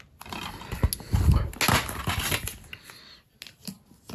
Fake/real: real